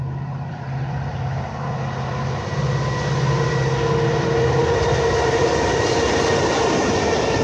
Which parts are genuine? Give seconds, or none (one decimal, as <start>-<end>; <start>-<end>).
0.0-7.4